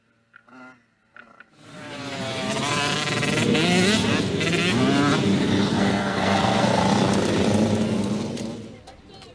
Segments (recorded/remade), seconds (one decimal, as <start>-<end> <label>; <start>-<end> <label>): 0.0-5.7 recorded; 5.7-6.8 remade; 6.8-9.3 recorded